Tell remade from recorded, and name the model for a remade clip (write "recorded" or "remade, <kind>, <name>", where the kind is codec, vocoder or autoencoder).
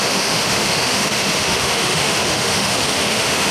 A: remade, autoencoder, DAC-VAE